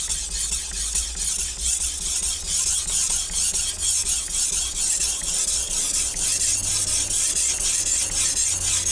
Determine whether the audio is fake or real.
real